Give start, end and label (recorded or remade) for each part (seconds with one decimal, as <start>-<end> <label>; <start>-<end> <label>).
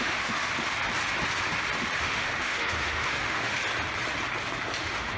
0.0-0.5 remade; 0.5-2.0 recorded; 2.0-3.6 remade; 3.6-4.8 recorded; 4.8-5.2 remade